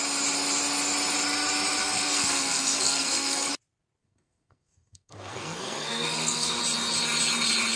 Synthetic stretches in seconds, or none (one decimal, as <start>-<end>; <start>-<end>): 1.8-3.5; 4.0-6.6